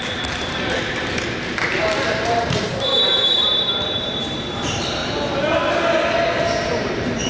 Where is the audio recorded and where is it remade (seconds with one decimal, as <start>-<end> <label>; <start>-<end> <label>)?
0.0-5.0 remade; 5.0-5.7 recorded; 5.7-7.3 remade